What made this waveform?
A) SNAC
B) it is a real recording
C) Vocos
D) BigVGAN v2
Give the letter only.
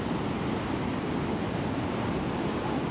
B